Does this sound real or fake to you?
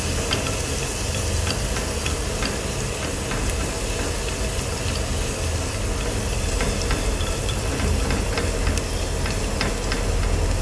real